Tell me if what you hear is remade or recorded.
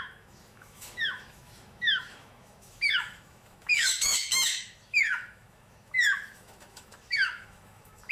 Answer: remade